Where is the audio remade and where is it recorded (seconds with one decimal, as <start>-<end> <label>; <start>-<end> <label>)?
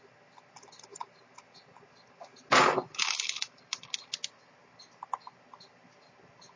0.0-6.6 recorded